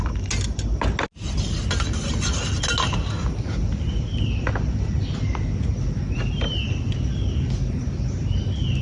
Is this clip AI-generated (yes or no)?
no